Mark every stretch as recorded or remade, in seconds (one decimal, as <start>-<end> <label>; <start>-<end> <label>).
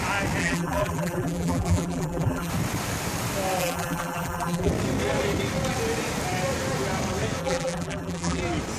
0.0-0.4 recorded; 0.4-2.5 remade; 2.5-3.6 recorded; 3.6-4.7 remade; 4.7-7.4 recorded; 7.4-8.4 remade; 8.4-8.8 recorded